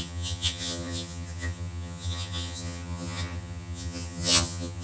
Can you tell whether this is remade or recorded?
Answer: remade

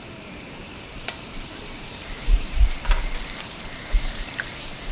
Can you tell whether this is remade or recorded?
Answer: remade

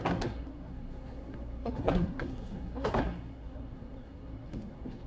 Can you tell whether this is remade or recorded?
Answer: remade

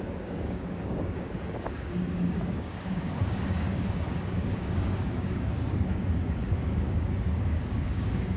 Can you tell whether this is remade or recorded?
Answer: remade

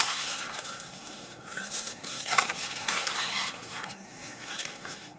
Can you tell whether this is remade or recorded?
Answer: remade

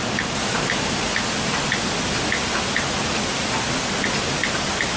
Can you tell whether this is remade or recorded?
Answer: recorded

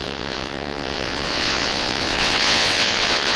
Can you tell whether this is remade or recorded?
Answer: remade